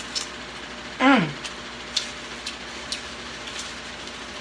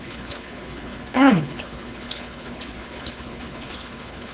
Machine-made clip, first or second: second